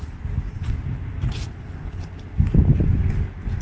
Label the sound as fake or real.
real